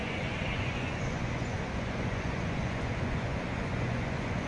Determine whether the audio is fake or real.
fake